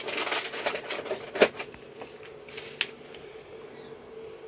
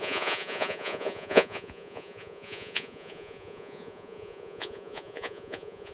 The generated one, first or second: second